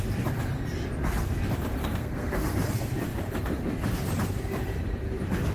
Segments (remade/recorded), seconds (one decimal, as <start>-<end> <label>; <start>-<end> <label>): 0.0-1.8 recorded; 1.8-2.5 remade; 2.5-5.5 recorded